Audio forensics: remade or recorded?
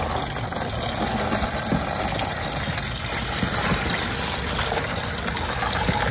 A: recorded